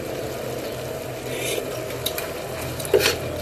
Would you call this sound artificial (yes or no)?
no